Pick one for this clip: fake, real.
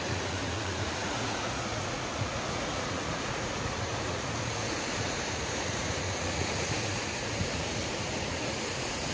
fake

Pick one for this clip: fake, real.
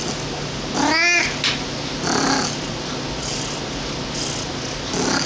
real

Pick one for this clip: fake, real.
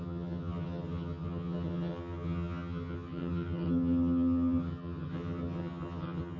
fake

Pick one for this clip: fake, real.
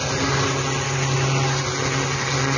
real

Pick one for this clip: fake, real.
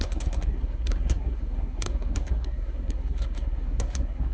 fake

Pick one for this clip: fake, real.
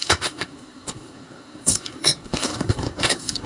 fake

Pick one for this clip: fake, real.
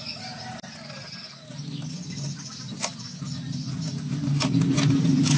real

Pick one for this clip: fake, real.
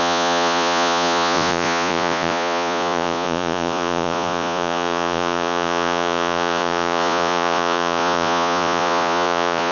fake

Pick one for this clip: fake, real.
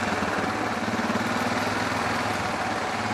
real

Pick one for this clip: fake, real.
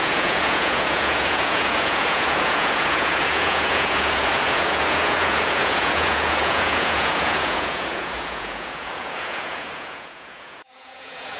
fake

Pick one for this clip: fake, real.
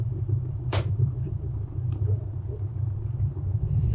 fake